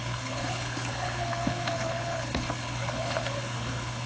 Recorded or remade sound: remade